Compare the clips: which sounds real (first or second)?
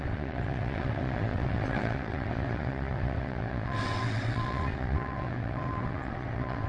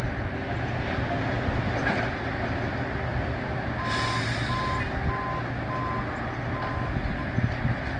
second